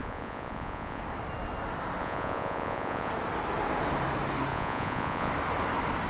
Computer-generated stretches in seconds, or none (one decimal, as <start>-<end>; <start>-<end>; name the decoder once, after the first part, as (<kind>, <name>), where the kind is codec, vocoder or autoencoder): 0.0-1.0 (vocoder, Vocos); 2.0-3.1; 4.5-5.3